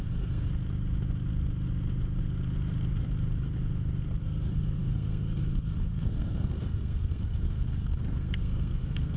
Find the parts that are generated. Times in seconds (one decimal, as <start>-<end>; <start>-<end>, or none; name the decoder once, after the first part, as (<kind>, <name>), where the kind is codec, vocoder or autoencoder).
0.0-0.5 (codec, SNAC); 4.2-9.2

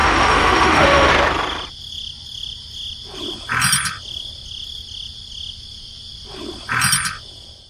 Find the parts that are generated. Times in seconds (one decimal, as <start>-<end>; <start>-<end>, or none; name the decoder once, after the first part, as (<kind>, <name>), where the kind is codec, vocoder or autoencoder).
0.0-1.1 (autoencoder, DAC-VAE)

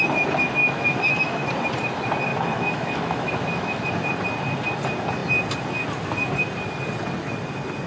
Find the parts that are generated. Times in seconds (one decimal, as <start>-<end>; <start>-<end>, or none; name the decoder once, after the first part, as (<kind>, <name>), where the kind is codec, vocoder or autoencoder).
0.6-1.5 (autoencoder, DAC-VAE); 2.3-3.8